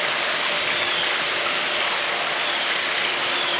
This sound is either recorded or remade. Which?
recorded